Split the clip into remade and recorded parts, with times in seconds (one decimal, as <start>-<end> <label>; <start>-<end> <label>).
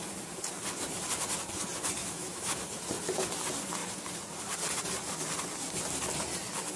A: 0.0-2.0 recorded; 2.0-2.6 remade; 2.6-6.8 recorded